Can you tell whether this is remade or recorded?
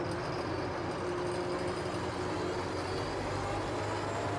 recorded